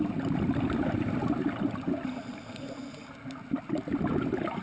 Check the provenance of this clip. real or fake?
real